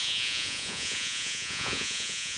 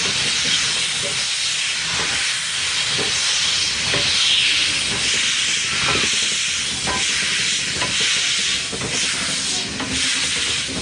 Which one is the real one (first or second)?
second